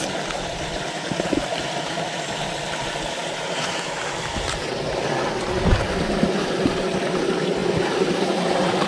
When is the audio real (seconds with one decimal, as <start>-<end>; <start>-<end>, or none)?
0.0-8.9